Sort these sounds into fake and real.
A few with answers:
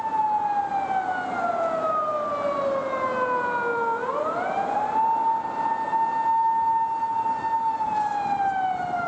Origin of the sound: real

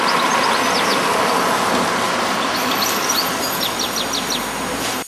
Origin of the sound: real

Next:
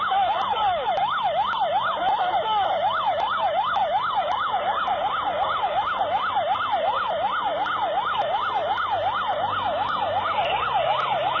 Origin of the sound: real